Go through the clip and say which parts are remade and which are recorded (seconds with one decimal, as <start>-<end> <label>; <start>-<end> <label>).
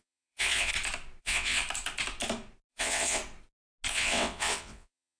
0.0-0.7 remade; 0.7-1.2 recorded; 1.2-1.6 remade; 1.6-2.7 recorded; 2.7-3.2 remade; 3.2-3.9 recorded; 3.9-5.2 remade